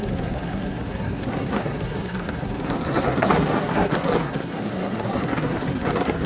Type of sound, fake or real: fake